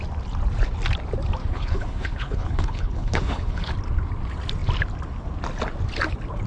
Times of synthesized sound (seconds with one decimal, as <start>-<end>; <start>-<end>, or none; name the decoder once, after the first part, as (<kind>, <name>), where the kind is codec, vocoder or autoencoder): 1.4-3.7 (codec, HILCodec)

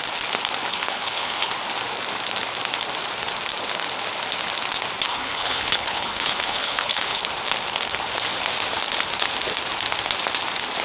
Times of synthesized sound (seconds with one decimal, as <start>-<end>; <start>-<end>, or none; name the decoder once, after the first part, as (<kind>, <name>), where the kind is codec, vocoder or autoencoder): 0.7-1.5 (codec, HILCodec); 5.1-7.2